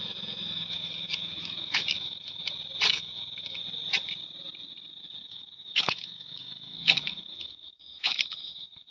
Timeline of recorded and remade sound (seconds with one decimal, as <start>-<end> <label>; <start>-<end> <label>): 0.0-2.4 remade; 2.4-2.9 recorded; 2.9-3.6 remade; 3.6-5.2 recorded; 5.2-8.9 remade